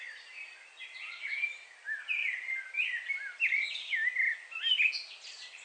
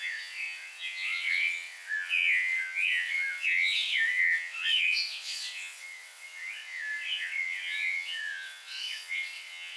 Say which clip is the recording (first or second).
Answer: first